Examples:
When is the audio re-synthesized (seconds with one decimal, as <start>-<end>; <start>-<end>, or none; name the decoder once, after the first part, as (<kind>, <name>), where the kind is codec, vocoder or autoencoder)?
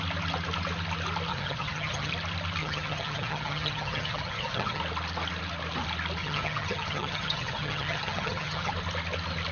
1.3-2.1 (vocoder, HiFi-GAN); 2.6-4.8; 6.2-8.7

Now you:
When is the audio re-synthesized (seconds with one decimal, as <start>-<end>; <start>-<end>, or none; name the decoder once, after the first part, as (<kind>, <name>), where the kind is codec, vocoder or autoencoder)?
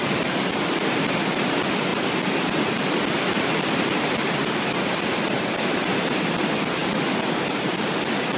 none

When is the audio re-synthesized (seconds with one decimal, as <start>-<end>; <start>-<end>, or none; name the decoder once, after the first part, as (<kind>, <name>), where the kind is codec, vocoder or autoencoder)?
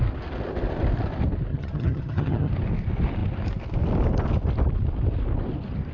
1.5-2.5 (vocoder, HiFi-GAN)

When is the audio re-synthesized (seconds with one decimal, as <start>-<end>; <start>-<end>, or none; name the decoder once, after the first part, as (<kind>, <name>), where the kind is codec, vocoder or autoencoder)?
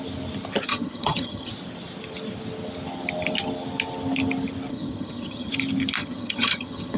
0.7-1.5 (vocoder, HiFi-GAN); 4.7-5.5; 6.0-7.0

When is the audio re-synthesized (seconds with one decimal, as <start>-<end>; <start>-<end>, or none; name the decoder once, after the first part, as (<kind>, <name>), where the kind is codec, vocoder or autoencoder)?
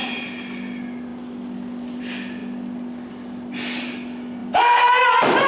none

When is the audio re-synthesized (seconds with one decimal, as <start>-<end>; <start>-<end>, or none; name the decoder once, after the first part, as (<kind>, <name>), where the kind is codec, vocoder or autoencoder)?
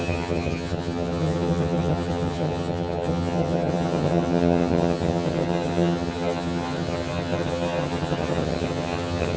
0.0-9.4 (vocoder, HiFi-GAN)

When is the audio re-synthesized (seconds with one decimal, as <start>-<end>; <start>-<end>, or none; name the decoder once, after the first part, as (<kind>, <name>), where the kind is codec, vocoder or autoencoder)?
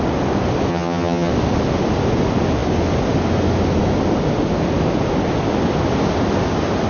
0.7-1.3 (vocoder, HiFi-GAN)